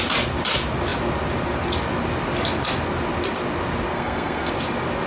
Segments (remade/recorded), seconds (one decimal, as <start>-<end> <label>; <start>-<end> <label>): 0.0-3.9 recorded; 3.9-4.5 remade; 4.5-5.1 recorded